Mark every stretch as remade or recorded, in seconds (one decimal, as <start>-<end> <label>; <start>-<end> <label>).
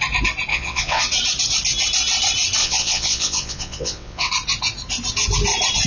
0.0-0.5 recorded; 0.5-1.0 remade; 1.0-2.6 recorded; 2.6-4.3 remade; 4.3-5.9 recorded